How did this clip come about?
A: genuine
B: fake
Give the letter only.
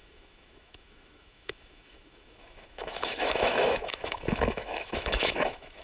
B